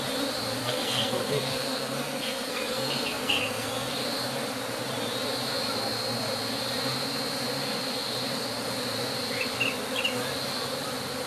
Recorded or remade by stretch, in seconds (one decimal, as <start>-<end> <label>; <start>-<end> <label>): 0.0-0.6 recorded; 0.6-3.9 remade; 3.9-11.3 recorded